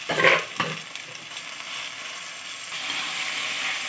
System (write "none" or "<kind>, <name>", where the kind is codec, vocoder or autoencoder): none